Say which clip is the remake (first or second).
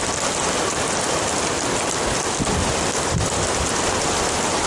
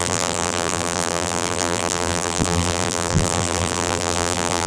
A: second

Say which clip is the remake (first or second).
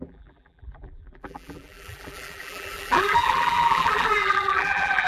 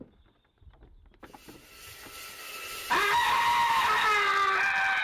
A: first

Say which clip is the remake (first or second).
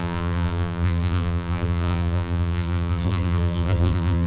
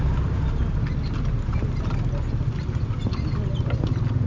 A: first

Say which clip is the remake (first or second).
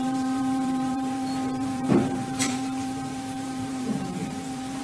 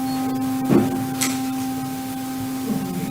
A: first